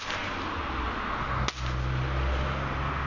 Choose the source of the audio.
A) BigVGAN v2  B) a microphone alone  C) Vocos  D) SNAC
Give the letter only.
B